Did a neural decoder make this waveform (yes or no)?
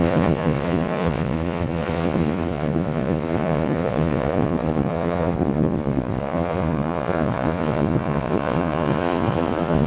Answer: yes